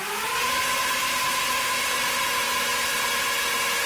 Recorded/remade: recorded